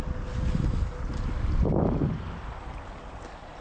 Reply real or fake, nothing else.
real